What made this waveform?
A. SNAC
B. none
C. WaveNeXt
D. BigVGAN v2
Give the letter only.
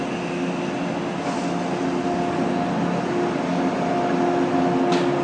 B